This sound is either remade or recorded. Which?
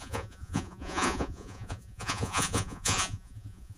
remade